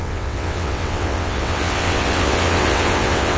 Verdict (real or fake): fake